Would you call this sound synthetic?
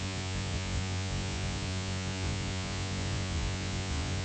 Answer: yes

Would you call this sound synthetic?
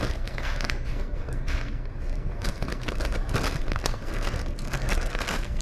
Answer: yes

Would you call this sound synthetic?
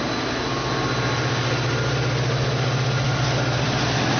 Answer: no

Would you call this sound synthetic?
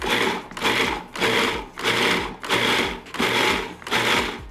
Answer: no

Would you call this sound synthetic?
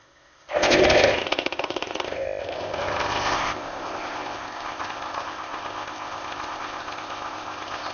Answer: yes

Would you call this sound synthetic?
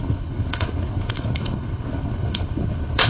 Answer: yes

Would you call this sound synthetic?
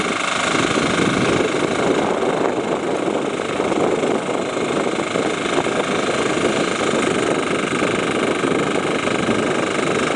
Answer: no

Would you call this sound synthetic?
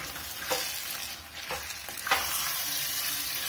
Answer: no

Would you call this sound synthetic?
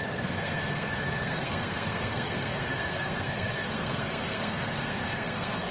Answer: yes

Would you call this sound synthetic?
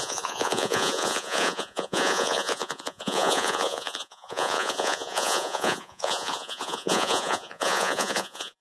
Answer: yes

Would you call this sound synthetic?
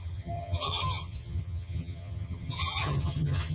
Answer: yes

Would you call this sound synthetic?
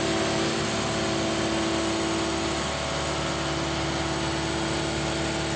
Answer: no